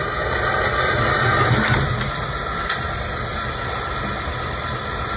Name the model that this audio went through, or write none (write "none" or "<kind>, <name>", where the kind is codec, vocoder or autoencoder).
none